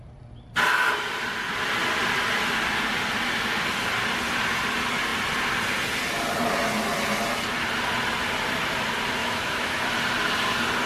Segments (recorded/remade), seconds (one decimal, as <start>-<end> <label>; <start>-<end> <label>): 0.0-9.2 recorded; 9.2-9.8 remade; 9.8-10.9 recorded